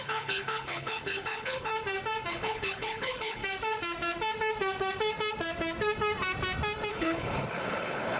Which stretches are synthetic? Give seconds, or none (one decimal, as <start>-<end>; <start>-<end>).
0.0-1.7; 2.3-3.4; 6.9-8.2